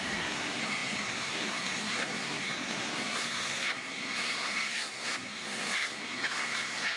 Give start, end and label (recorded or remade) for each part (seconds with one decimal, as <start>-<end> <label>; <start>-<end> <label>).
0.0-7.0 remade